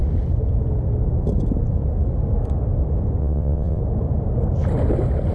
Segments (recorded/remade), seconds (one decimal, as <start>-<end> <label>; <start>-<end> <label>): 0.0-3.2 recorded; 3.2-3.8 remade; 3.8-5.3 recorded